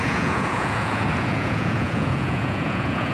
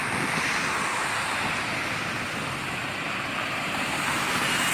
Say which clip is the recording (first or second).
second